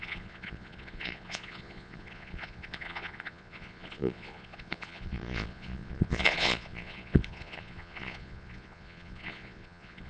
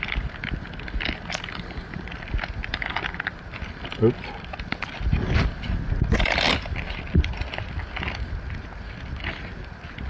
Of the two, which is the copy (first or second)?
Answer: first